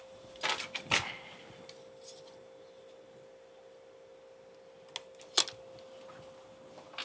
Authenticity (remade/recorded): recorded